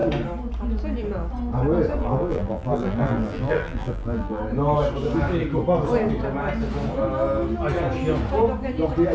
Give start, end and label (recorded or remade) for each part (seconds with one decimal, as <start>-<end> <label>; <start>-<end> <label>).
0.0-2.0 recorded; 2.0-4.4 remade; 4.4-9.1 recorded